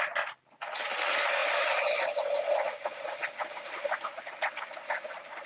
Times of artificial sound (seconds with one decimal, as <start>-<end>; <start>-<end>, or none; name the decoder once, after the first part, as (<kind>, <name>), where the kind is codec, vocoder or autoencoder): none